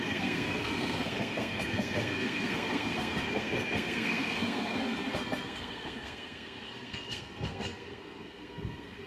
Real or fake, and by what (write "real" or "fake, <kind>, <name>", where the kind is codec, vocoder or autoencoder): fake, codec, SNAC